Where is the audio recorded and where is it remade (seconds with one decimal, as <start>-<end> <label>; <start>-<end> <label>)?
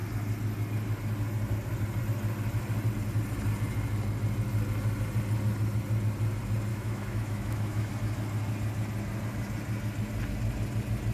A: 0.0-6.7 recorded; 6.7-7.9 remade; 7.9-11.1 recorded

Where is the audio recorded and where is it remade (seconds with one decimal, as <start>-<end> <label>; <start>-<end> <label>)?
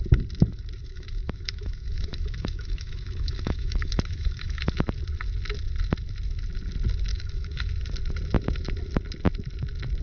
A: 0.0-0.8 recorded; 0.8-4.7 remade; 4.7-7.1 recorded; 7.1-7.7 remade; 7.7-10.0 recorded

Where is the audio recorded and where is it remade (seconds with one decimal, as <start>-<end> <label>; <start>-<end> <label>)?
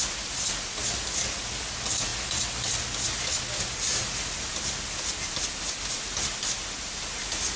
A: 0.0-7.6 recorded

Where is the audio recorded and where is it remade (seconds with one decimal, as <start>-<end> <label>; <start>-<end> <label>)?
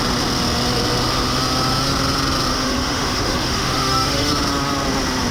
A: 0.0-2.5 recorded; 2.5-4.3 remade; 4.3-5.3 recorded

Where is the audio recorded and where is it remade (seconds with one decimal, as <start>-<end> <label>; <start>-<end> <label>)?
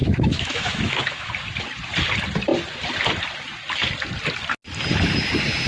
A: 0.0-1.3 remade; 1.3-5.7 recorded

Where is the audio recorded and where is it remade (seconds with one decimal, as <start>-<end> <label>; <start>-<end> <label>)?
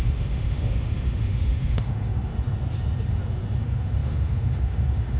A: 0.0-2.3 remade; 2.3-3.6 recorded; 3.6-5.2 remade